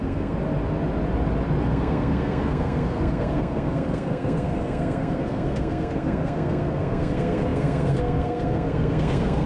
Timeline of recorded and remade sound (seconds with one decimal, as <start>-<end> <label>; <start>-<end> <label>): 0.0-0.4 remade; 0.4-1.6 recorded; 1.6-9.5 remade